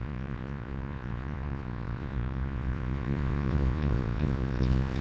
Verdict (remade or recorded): remade